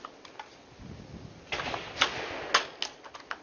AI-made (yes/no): no